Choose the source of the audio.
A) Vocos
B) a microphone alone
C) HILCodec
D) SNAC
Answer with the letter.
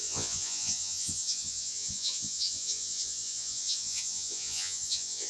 A